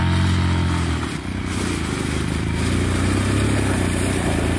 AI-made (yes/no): no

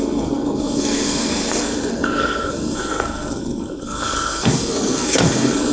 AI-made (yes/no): yes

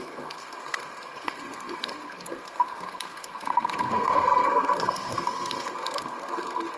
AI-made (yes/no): yes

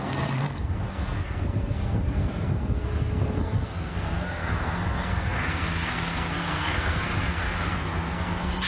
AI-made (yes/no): yes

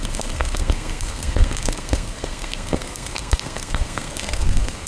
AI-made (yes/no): yes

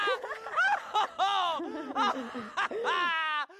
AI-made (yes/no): no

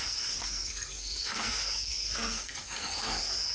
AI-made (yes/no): yes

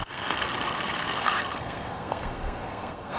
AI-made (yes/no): yes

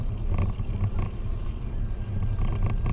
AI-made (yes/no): no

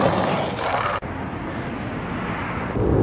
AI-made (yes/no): no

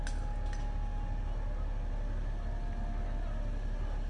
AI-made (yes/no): no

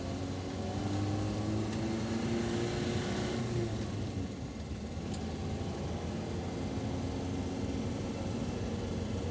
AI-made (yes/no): no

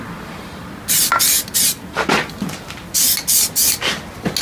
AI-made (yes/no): no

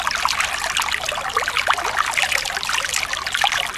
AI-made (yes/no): no